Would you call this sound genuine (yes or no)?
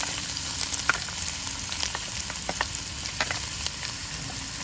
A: yes